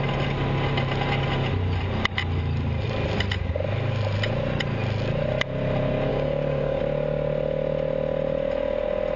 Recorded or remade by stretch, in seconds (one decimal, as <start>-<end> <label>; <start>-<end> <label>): 0.0-6.1 recorded; 6.1-6.8 remade; 6.8-9.2 recorded